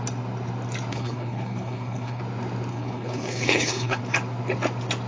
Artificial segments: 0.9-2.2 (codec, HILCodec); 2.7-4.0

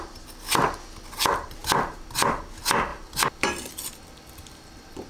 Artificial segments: 2.9-3.7 (vocoder, BigVGAN v2)